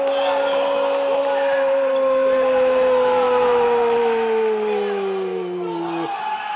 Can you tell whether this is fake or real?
real